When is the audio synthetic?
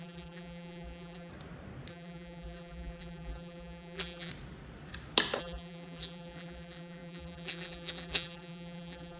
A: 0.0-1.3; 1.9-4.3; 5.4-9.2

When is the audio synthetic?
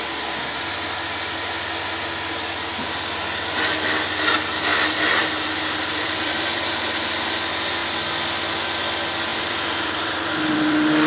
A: 4.7-6.9; 9.3-11.1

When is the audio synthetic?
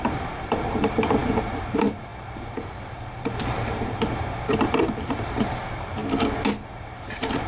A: 0.0-6.0; 6.7-7.5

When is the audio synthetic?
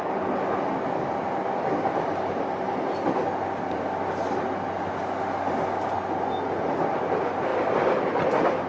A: 7.5-8.7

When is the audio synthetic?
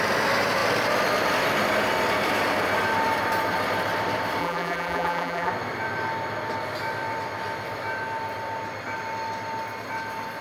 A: 4.4-5.5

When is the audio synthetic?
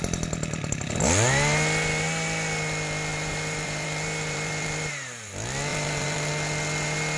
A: 3.1-5.3; 5.7-6.3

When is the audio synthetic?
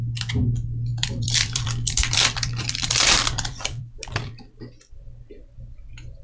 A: 0.9-4.6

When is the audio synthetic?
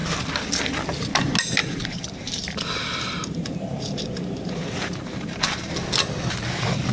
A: 1.6-5.7